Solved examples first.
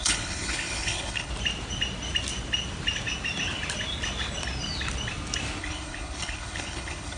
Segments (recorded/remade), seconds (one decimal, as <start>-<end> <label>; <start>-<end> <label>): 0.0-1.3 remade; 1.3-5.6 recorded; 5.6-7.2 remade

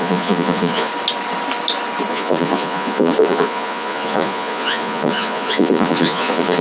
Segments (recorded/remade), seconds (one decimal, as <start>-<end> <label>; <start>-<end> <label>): 0.0-0.9 remade; 0.9-2.1 recorded; 2.1-6.6 remade

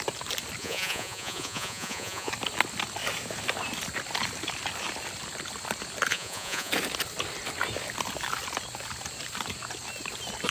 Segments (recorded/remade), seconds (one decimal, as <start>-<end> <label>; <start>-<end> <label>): 0.0-0.6 recorded; 0.6-2.3 remade; 2.3-6.1 recorded; 6.1-6.7 remade; 6.7-10.5 recorded

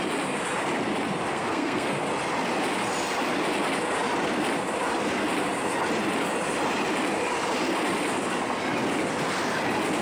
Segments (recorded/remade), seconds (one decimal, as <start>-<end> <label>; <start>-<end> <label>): 0.0-1.3 recorded; 1.3-2.0 remade; 2.0-10.0 recorded

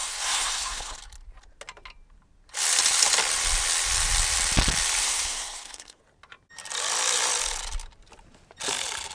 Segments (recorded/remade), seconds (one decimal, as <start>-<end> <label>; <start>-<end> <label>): 0.0-1.0 remade; 1.0-5.0 recorded; 5.0-6.0 remade; 6.0-9.1 recorded

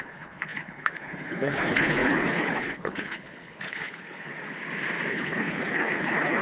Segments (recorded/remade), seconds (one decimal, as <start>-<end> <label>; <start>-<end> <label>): 0.0-4.3 remade; 4.3-5.1 recorded; 5.1-6.4 remade